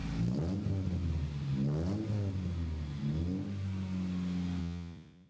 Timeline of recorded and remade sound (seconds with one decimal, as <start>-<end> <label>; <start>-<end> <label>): 0.0-4.6 recorded; 4.6-5.3 remade